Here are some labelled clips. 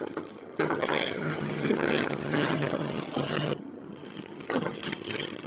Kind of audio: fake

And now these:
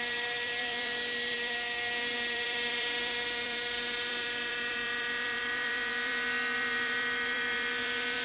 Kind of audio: fake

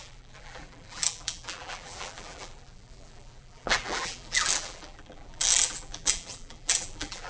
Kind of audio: fake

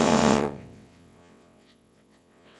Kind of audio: fake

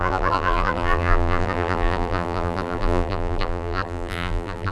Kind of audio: fake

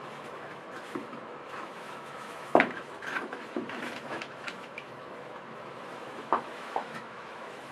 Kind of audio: fake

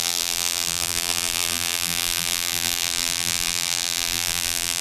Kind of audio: fake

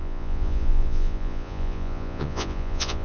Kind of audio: fake